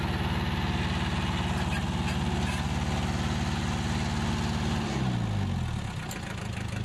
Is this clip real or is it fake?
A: real